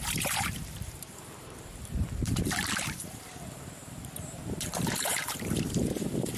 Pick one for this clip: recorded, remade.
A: remade